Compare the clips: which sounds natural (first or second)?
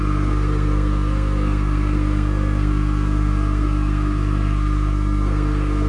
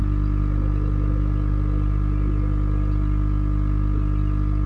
second